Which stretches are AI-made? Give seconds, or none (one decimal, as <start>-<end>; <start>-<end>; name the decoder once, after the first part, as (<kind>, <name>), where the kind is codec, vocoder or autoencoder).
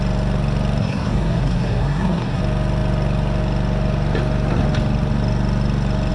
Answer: 0.8-2.4 (codec, SNAC)